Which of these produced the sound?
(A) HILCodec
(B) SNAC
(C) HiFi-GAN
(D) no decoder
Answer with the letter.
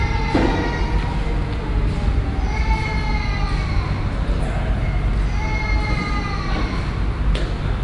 D